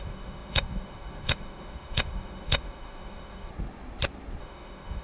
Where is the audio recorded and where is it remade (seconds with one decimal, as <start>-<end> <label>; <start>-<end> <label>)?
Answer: 0.0-3.5 remade; 3.5-4.4 recorded; 4.4-5.0 remade